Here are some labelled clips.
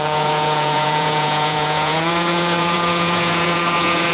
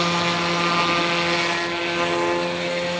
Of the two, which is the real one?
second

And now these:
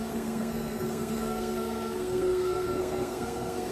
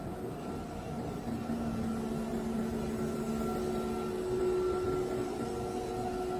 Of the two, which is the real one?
second